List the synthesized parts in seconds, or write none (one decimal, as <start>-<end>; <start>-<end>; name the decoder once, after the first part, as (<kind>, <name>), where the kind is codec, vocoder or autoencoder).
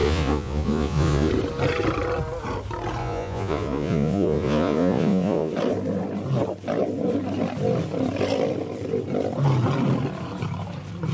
0.0-1.3 (vocoder, Vocos); 3.0-5.5